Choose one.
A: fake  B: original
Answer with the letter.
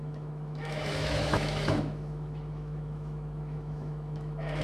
A